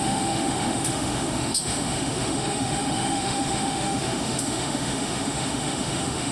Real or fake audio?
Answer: fake